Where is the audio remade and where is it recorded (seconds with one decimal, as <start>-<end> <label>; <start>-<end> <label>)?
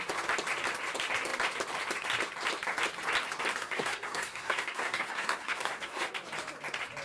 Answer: 0.0-3.6 recorded; 3.6-6.1 remade; 6.1-7.0 recorded